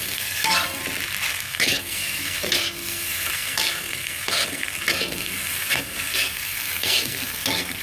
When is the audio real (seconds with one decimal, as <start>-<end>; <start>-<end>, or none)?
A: 0.8-1.3

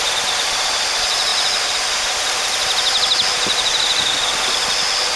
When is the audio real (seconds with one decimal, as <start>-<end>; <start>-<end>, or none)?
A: 0.0-5.2

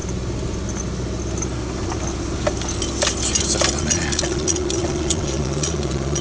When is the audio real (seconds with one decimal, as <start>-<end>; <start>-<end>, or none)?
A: 0.0-3.7

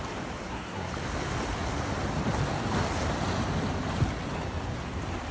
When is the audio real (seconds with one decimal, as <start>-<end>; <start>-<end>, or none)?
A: 0.0-0.4; 0.9-5.3

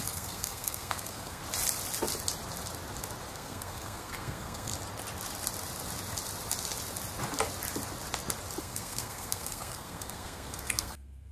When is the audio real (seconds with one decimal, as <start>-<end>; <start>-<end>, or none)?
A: 1.4-3.3; 4.7-8.6